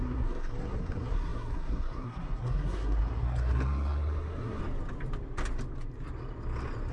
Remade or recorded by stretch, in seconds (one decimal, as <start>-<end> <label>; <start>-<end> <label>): 0.0-4.6 remade; 4.6-6.9 recorded